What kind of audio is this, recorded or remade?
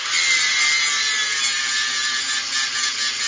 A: recorded